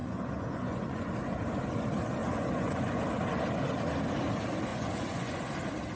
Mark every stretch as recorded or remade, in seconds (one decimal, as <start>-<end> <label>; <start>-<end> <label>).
0.0-1.1 remade; 1.1-2.2 recorded; 2.2-3.0 remade; 3.0-4.7 recorded; 4.7-5.5 remade; 5.5-6.0 recorded